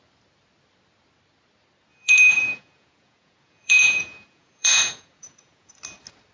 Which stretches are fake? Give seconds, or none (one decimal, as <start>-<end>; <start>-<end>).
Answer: 1.9-5.7